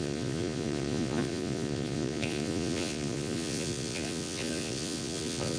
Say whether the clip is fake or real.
fake